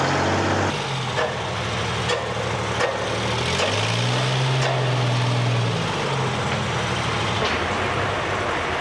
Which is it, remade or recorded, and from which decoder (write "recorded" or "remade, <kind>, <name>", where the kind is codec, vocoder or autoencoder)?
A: recorded